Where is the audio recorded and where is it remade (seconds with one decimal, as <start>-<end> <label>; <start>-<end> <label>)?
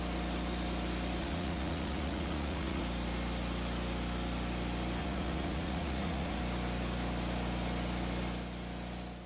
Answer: 0.0-1.2 recorded; 1.2-2.8 remade; 2.8-5.0 recorded; 5.0-6.4 remade; 6.4-9.3 recorded